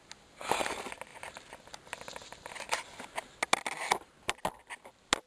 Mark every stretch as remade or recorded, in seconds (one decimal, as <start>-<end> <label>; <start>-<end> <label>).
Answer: 0.0-5.3 recorded